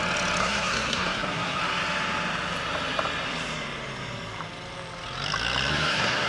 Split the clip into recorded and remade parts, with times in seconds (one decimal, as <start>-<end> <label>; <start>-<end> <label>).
0.0-0.4 recorded; 0.4-1.6 remade; 1.6-5.7 recorded; 5.7-6.3 remade